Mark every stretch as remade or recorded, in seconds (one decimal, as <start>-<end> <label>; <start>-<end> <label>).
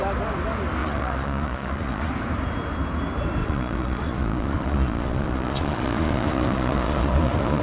0.0-0.8 recorded; 0.8-2.1 remade; 2.1-3.4 recorded; 3.4-7.6 remade